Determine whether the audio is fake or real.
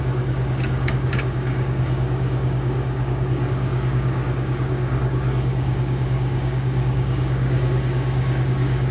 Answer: fake